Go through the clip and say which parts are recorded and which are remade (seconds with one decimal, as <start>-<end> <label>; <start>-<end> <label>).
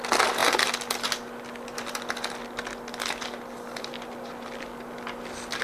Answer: 0.0-5.6 recorded